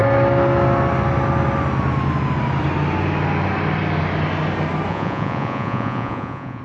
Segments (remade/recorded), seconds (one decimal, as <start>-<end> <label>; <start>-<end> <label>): 0.0-4.9 recorded; 4.9-6.6 remade